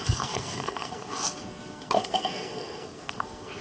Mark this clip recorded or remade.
remade